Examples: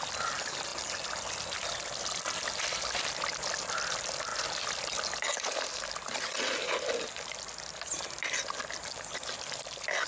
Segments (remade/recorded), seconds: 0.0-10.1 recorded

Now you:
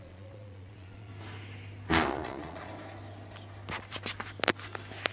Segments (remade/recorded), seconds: 0.0-1.1 remade; 1.1-1.9 recorded; 1.9-2.7 remade; 2.7-5.1 recorded

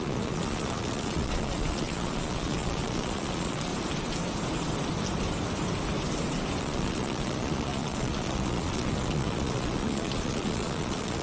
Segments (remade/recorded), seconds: 0.0-3.7 remade; 3.7-6.6 recorded; 6.6-11.2 remade

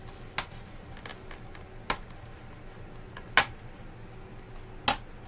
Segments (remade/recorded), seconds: 0.0-5.3 recorded

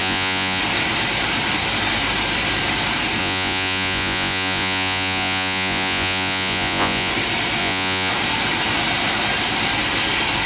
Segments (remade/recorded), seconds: 0.0-0.6 remade; 0.6-3.2 recorded; 3.2-7.1 remade; 7.1-7.6 recorded; 7.6-8.1 remade; 8.1-10.5 recorded